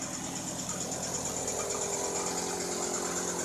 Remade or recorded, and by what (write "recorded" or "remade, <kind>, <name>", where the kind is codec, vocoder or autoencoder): recorded